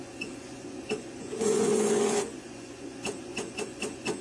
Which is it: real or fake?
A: fake